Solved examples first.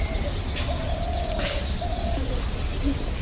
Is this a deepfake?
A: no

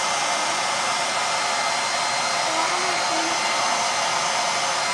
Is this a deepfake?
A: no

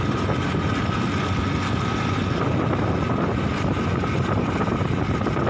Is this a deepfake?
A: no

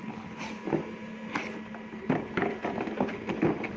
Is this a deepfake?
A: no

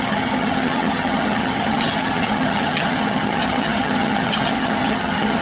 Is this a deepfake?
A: yes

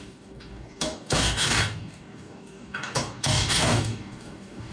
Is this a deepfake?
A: yes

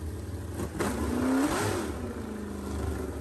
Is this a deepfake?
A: no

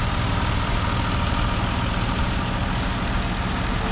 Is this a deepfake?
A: no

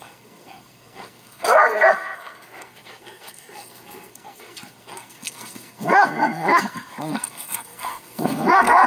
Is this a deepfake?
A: yes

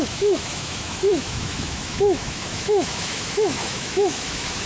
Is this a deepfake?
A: yes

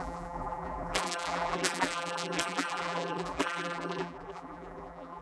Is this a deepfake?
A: yes